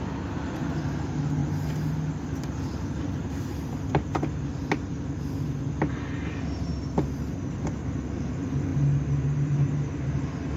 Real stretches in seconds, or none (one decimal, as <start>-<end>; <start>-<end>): 0.0-10.6